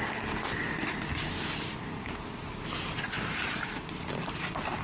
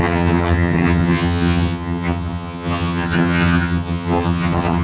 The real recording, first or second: first